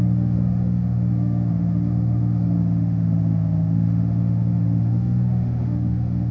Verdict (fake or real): fake